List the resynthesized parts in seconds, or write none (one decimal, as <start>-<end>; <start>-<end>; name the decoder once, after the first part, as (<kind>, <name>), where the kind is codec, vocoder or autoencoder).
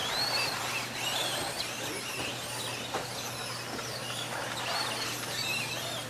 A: none